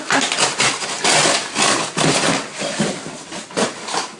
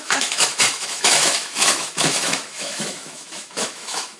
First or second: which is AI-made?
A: second